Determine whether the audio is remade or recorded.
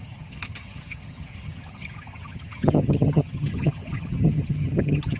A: remade